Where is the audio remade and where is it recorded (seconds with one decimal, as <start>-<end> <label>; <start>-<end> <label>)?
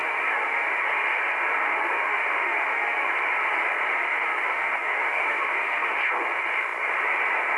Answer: 0.0-0.9 remade; 0.9-1.5 recorded; 1.5-3.1 remade; 3.1-3.9 recorded; 3.9-5.9 remade; 5.9-7.6 recorded